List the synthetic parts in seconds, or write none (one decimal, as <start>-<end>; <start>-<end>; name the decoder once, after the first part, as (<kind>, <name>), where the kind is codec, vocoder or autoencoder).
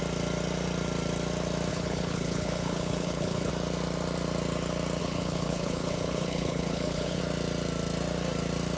1.7-3.5 (codec, HILCodec); 5.0-7.2